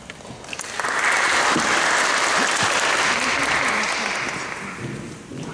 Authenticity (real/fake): real